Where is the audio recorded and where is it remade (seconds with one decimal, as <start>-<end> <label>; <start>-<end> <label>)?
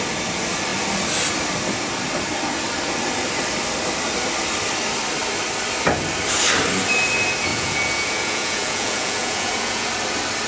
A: 0.0-7.5 recorded; 7.5-9.9 remade; 9.9-10.5 recorded